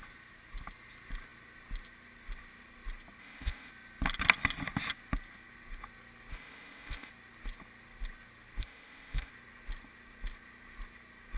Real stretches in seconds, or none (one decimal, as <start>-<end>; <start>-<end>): 0.0-3.2; 3.7-6.3; 7.1-8.6; 9.3-11.4